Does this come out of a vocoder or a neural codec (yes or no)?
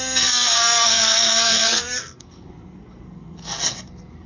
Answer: yes